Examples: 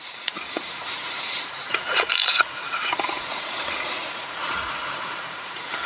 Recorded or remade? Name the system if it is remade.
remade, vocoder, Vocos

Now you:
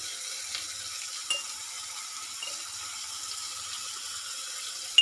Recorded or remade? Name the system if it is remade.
recorded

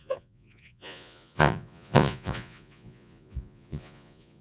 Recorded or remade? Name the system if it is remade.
remade, vocoder, Vocos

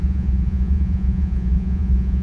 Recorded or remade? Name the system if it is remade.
remade, vocoder, Vocos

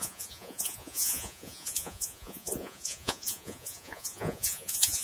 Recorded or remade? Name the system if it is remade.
remade, vocoder, Vocos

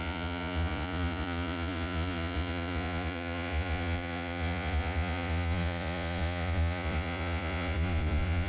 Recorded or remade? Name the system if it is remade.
remade, vocoder, Vocos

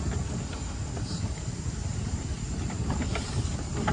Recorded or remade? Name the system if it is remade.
recorded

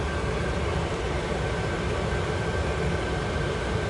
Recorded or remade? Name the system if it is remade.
recorded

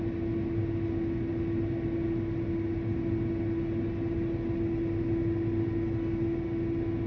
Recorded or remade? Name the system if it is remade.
recorded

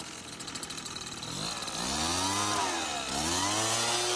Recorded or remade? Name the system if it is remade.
recorded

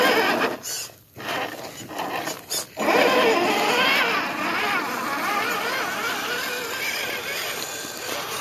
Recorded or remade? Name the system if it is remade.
recorded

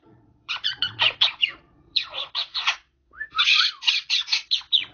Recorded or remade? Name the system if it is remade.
remade, vocoder, Vocos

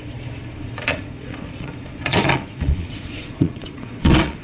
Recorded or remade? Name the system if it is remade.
remade, vocoder, Vocos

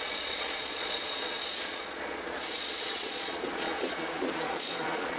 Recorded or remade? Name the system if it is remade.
remade, vocoder, Vocos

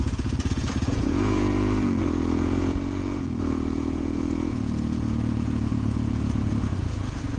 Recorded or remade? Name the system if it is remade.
remade, vocoder, Vocos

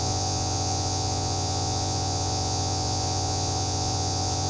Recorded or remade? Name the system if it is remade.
remade, vocoder, Vocos